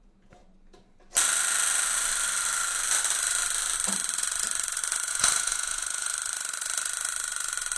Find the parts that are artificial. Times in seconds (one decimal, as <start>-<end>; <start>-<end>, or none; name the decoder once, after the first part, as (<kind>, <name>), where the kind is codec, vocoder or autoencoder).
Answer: 0.0-0.4 (vocoder, Vocos); 5.1-6.1